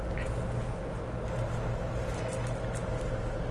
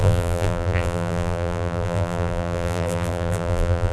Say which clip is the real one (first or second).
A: first